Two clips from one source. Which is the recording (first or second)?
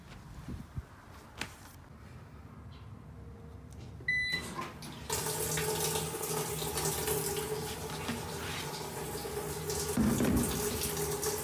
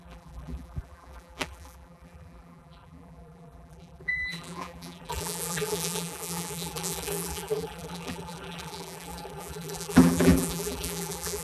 first